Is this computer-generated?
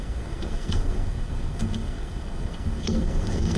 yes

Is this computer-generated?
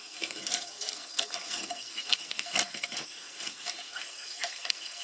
yes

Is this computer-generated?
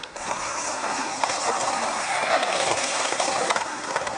yes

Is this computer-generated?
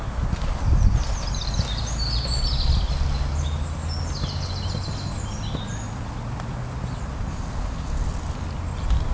no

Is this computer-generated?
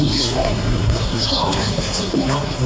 yes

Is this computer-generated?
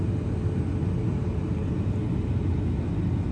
no